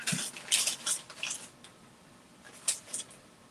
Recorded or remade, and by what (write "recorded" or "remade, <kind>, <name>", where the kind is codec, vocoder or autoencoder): recorded